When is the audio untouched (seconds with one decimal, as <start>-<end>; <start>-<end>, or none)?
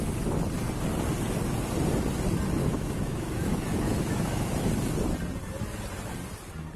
0.0-2.6; 4.5-6.8